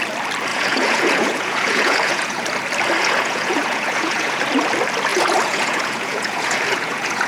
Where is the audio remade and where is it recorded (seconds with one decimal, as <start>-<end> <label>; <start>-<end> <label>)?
0.0-0.5 recorded; 0.5-2.4 remade; 2.4-3.0 recorded; 3.0-4.4 remade; 4.4-5.1 recorded; 5.1-7.3 remade